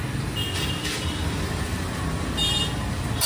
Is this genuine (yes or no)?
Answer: yes